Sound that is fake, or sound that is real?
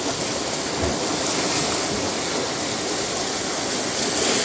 real